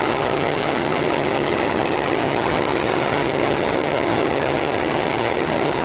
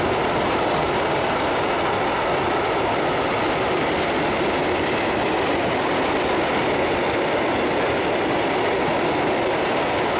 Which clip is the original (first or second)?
second